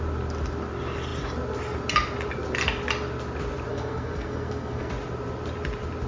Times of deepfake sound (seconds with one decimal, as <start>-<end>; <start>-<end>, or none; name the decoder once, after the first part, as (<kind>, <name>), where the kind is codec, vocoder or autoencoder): 3.7-4.9 (codec, SNAC)